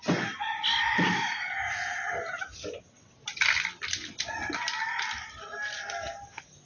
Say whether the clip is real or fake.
real